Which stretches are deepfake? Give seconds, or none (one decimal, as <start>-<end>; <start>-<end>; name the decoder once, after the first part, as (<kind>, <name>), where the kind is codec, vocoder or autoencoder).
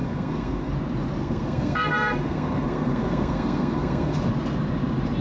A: 0.0-0.7 (codec, SNAC); 1.2-4.3